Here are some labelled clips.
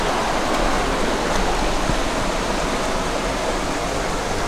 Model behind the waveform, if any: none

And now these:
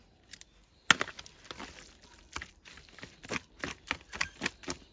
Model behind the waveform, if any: none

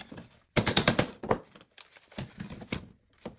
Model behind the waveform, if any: none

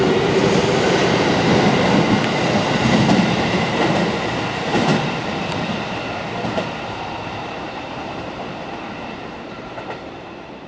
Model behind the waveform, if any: vocoder, BigVGAN v2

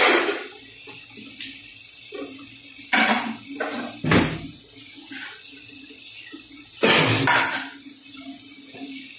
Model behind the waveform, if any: none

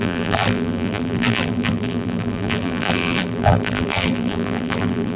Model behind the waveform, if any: vocoder, BigVGAN v2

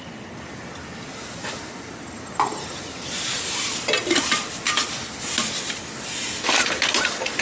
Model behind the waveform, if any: none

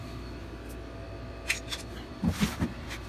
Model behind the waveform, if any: none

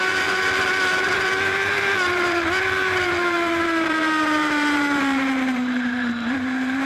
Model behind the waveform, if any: vocoder, BigVGAN v2